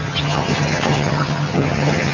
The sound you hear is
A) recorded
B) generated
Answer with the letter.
B